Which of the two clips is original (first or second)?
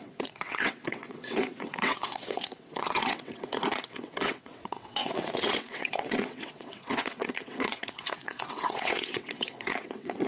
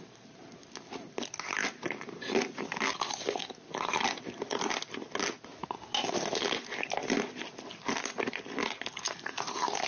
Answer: second